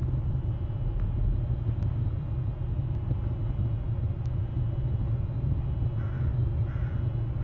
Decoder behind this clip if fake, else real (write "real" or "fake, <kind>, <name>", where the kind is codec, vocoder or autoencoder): real